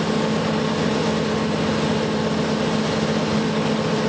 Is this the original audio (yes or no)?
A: yes